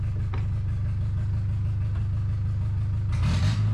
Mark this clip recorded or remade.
recorded